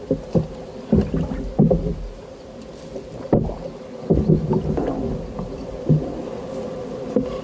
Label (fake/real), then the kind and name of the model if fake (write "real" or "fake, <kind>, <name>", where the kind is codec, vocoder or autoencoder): real